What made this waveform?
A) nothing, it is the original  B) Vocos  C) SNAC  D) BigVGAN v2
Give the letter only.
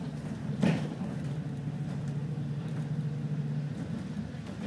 A